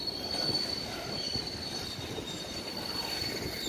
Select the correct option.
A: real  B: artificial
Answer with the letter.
A